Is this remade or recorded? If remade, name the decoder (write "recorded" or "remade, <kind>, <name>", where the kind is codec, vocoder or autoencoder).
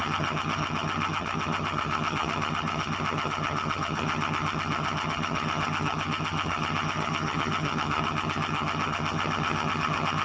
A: remade, vocoder, HiFi-GAN